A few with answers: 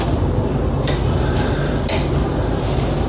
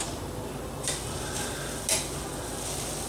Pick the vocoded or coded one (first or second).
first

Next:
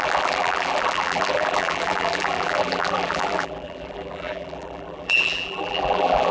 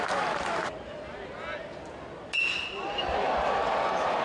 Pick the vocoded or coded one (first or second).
first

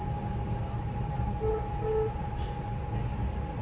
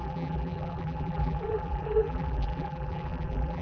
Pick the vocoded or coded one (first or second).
second